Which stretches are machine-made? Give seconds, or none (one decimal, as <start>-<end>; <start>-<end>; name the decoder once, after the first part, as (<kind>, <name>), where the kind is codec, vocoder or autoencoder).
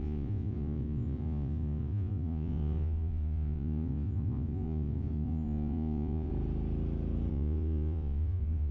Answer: 0.0-6.3 (vocoder, Vocos); 7.3-8.7